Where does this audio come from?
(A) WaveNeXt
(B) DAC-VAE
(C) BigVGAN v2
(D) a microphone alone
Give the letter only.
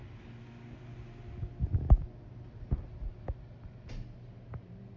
D